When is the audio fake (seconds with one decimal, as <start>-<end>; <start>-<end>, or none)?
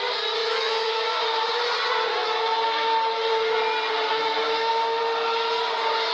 0.4-1.6; 2.2-3.3; 4.1-4.7